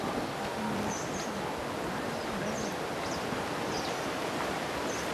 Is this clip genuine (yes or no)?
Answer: yes